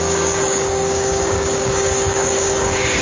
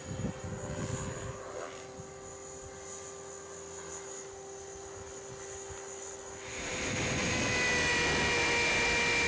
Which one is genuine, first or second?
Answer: second